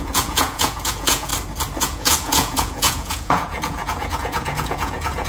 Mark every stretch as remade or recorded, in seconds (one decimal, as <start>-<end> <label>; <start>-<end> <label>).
0.0-1.3 remade; 1.3-1.8 recorded; 1.8-5.3 remade